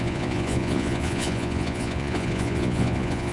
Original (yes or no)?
no